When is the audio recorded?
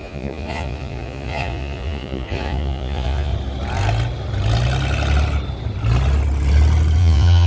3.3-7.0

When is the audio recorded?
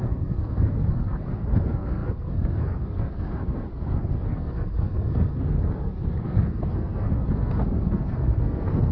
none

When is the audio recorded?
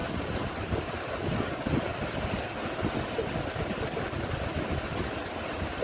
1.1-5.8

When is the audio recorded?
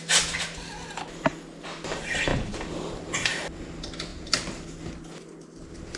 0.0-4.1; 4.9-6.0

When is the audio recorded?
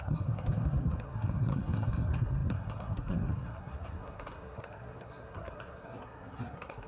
none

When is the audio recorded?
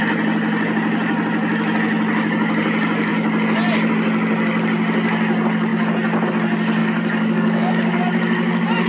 0.0-6.8; 8.0-8.9